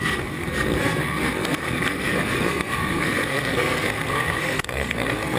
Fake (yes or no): yes